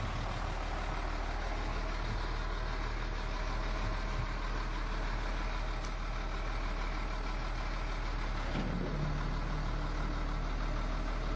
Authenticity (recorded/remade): recorded